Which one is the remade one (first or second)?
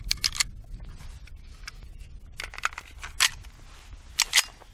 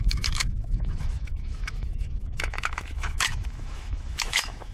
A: second